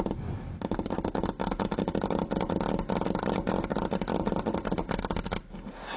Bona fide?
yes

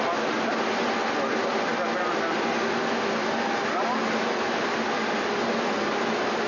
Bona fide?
yes